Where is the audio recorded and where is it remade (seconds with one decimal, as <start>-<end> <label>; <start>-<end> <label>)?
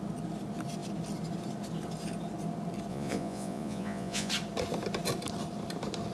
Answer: 0.0-2.9 recorded; 2.9-4.3 remade; 4.3-6.1 recorded